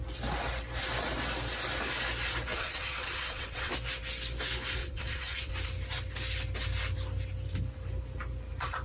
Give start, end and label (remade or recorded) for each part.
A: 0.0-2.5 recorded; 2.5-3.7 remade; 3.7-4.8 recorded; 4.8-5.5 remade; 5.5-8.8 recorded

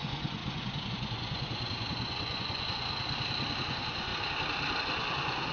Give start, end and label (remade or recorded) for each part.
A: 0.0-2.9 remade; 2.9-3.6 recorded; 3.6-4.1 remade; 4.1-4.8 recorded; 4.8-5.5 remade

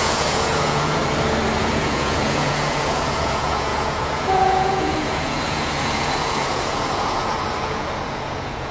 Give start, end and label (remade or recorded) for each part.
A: 0.0-1.0 remade; 1.0-1.6 recorded; 1.6-8.7 remade

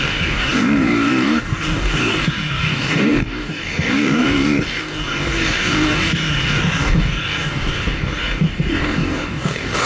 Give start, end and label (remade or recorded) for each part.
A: 0.0-9.9 remade

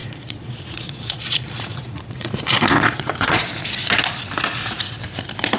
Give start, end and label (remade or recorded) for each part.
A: 0.0-3.4 remade; 3.4-5.6 recorded

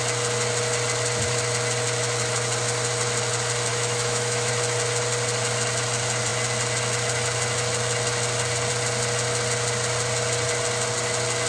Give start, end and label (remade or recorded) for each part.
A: 0.0-3.7 recorded; 3.7-4.5 remade; 4.5-11.5 recorded

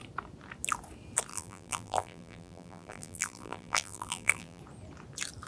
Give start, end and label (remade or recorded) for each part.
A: 0.0-1.3 recorded; 1.3-4.6 remade; 4.6-5.5 recorded